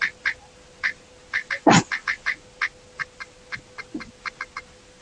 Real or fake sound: real